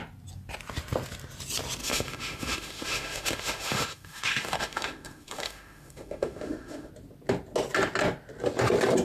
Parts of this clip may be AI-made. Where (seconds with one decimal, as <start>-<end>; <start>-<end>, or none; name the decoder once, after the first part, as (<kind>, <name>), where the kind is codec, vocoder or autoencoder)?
1.8-6.9 (autoencoder, DAC-VAE)